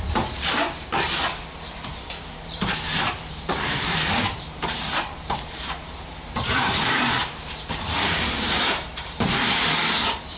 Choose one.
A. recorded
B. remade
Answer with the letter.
B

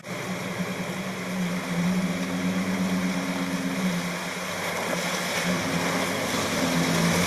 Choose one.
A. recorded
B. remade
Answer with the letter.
A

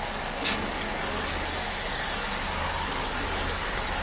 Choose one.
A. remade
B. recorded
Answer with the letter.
A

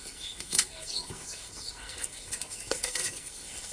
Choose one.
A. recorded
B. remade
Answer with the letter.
B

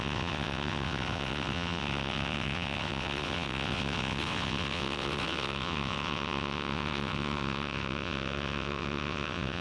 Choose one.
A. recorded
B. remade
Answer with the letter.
B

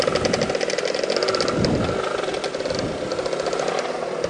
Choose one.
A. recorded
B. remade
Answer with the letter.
A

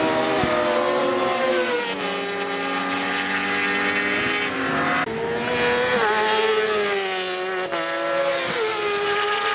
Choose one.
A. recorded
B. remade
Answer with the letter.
A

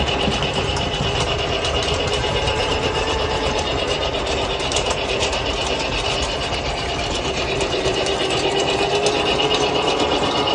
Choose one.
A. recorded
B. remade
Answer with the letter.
B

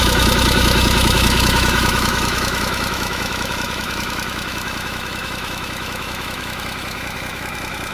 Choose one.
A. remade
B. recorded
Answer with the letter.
A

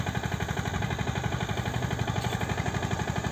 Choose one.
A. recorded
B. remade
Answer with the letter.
A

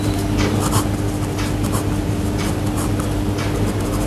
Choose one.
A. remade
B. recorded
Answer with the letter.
B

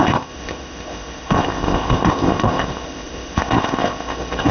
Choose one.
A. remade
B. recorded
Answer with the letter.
A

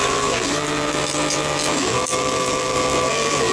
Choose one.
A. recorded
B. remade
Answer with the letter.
B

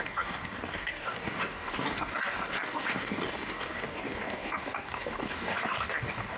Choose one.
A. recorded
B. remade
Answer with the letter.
B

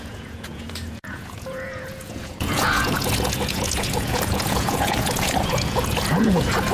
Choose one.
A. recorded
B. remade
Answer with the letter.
B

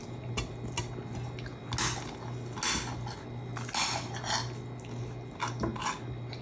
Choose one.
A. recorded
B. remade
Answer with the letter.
A